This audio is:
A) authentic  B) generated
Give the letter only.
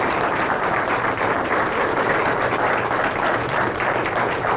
B